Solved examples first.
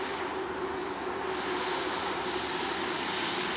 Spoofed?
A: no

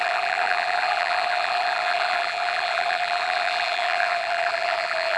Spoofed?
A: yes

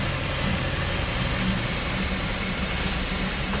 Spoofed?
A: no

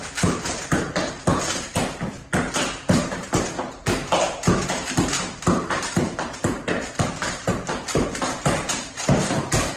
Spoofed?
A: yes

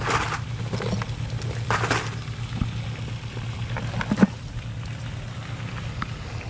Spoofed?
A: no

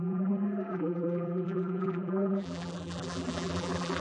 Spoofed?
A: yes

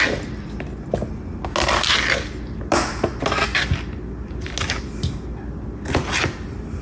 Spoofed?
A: no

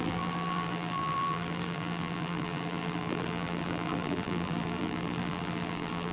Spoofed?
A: yes